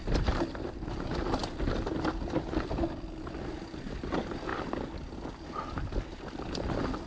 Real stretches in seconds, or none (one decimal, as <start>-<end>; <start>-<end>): 0.0-7.1